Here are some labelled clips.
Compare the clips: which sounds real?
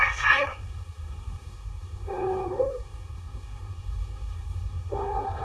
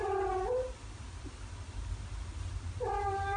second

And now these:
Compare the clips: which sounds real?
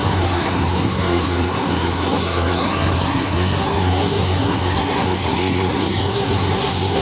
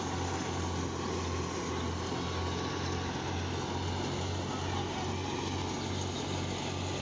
second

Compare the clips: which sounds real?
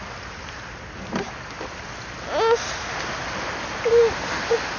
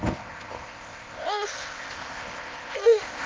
first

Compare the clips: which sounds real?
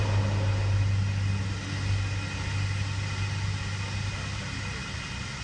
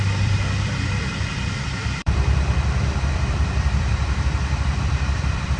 first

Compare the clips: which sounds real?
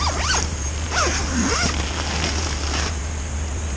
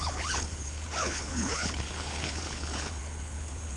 first